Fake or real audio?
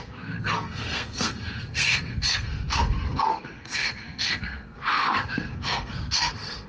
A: fake